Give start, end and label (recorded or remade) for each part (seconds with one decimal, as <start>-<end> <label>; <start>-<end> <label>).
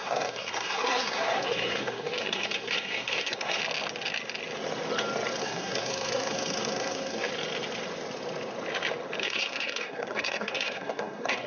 0.0-3.6 remade; 3.6-5.4 recorded; 5.4-7.3 remade; 7.3-9.2 recorded; 9.2-11.5 remade